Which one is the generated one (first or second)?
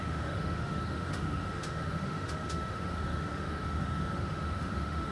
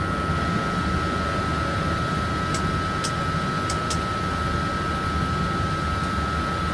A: first